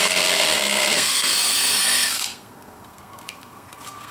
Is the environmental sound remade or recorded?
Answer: remade